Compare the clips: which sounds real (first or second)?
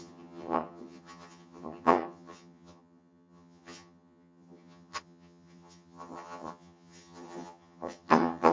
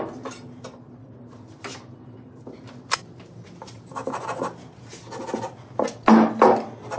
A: second